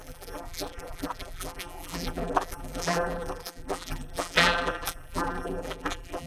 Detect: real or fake fake